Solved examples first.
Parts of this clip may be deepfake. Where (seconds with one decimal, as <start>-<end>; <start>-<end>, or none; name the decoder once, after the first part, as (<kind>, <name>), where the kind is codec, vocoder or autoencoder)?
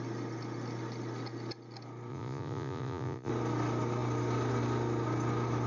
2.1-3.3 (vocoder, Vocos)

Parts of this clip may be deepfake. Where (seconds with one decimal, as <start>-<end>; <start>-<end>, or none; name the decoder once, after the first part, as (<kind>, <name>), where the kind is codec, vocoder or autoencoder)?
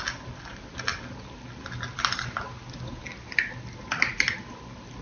none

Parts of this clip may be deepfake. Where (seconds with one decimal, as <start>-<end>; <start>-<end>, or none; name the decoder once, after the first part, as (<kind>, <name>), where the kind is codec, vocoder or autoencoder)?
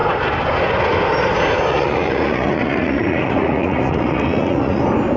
1.7-4.8 (vocoder, Vocos)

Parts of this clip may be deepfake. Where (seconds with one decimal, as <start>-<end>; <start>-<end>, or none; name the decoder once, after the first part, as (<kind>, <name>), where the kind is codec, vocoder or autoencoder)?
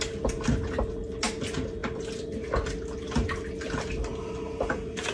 none